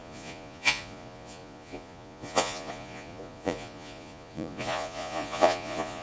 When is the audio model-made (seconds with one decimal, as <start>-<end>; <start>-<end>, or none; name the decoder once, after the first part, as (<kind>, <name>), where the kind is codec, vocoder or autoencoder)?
0.0-6.0 (vocoder, Vocos)